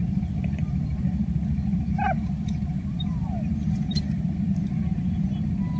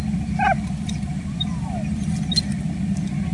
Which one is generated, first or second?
first